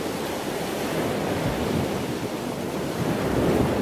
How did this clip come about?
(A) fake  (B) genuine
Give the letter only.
B